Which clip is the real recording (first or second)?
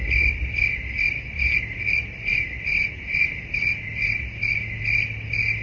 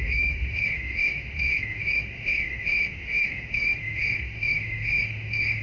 first